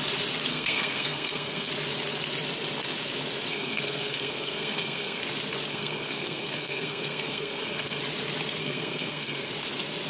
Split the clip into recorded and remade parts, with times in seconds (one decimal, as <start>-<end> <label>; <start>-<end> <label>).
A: 0.0-0.5 recorded; 0.5-1.7 remade; 1.7-3.5 recorded; 3.5-5.2 remade; 5.2-5.7 recorded; 5.7-8.0 remade; 8.0-8.6 recorded; 8.6-9.5 remade; 9.5-10.1 recorded